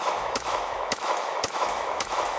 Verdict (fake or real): fake